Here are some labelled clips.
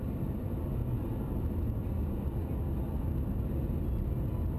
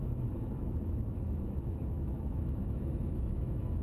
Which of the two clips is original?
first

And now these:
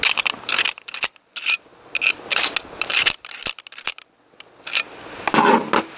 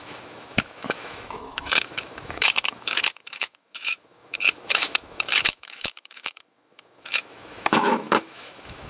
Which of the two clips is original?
first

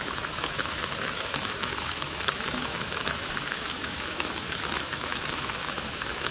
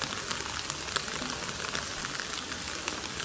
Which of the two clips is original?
second